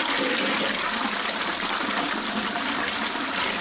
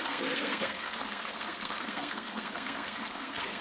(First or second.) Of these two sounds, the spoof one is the second